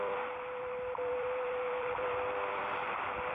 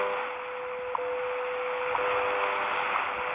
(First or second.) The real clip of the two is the second